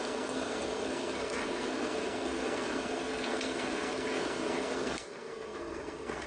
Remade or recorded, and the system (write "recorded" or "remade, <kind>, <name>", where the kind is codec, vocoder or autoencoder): remade, codec, SNAC